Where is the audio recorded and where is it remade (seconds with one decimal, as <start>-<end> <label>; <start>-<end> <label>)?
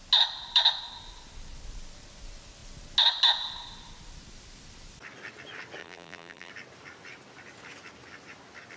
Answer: 0.0-5.8 recorded; 5.8-6.5 remade; 6.5-8.8 recorded